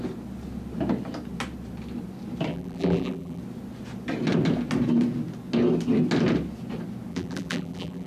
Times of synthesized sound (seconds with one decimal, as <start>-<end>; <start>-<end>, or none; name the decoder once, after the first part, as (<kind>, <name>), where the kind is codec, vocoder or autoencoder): 2.5-3.4 (vocoder, BigVGAN v2); 7.1-8.1